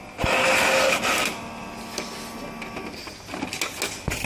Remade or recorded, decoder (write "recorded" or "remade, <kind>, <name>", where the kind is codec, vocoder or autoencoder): recorded